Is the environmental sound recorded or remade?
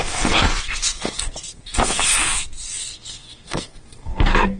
remade